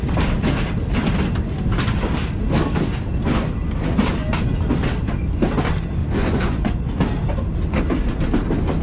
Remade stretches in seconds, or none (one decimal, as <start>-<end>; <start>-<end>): 6.0-6.9